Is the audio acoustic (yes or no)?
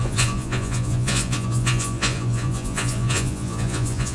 no